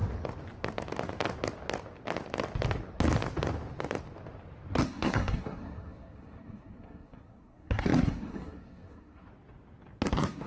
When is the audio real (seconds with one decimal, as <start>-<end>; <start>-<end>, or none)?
0.0-4.7; 9.3-10.1